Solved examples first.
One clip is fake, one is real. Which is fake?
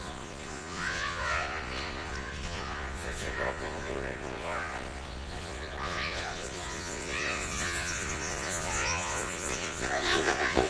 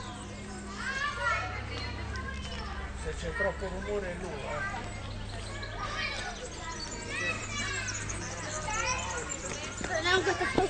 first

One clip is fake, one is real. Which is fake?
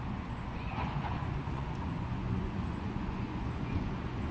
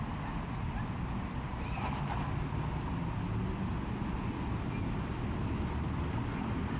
first